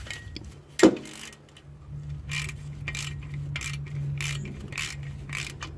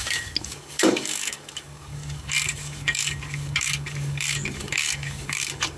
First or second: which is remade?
second